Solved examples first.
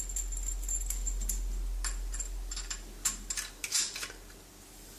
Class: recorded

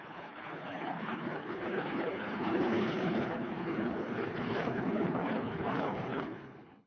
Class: remade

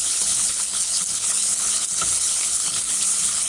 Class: remade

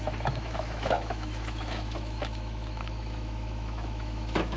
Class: remade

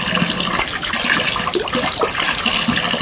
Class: recorded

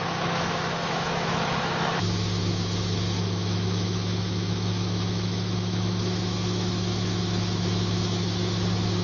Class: remade